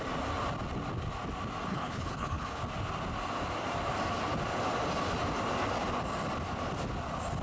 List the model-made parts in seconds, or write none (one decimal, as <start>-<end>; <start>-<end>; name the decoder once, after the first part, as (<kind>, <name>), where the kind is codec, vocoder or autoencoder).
1.7-2.6 (codec, HILCodec)